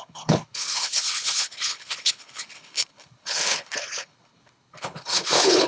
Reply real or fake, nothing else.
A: fake